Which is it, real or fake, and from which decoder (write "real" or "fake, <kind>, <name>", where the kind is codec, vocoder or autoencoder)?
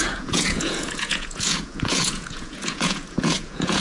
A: fake, vocoder, Vocos